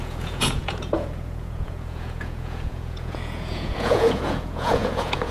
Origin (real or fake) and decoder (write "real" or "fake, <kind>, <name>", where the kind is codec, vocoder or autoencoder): fake, vocoder, Vocos